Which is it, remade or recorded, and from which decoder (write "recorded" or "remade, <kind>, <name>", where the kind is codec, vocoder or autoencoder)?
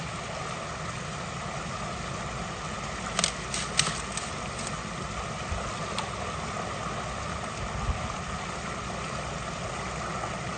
recorded